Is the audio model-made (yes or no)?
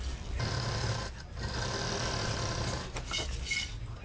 no